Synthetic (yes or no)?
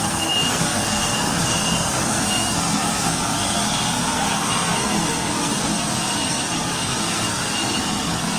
yes